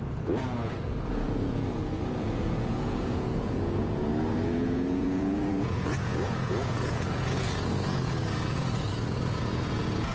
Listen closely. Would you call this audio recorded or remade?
remade